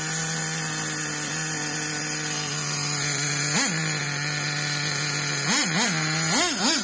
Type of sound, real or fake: real